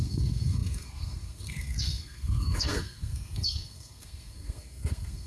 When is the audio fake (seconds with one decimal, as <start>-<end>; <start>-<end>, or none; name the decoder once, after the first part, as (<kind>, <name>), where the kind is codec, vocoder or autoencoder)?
0.0-5.3 (codec, SNAC)